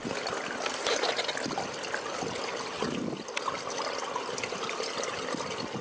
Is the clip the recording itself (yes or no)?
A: yes